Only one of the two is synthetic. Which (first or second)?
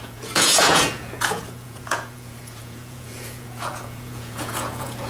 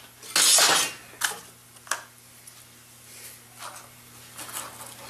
first